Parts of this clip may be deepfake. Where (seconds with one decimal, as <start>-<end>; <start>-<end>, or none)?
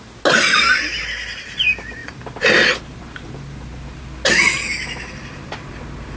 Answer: none